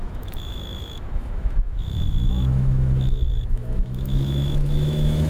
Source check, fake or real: fake